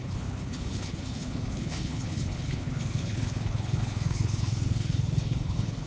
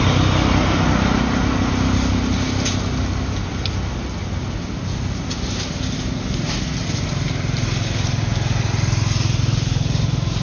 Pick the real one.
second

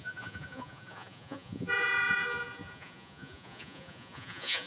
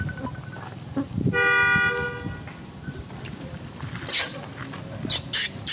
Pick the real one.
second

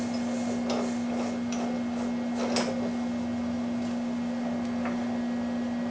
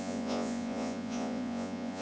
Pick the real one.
first